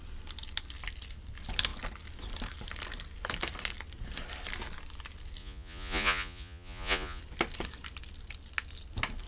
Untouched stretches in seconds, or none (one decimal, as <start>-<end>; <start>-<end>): 0.0-5.4; 7.2-9.3